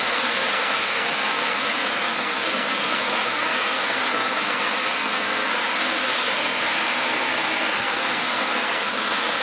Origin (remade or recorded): remade